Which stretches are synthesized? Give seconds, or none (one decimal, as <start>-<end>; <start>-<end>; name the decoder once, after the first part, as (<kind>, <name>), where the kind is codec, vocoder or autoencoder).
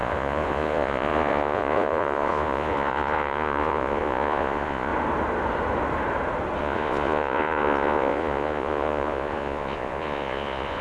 0.0-4.9 (vocoder, Vocos); 6.6-10.8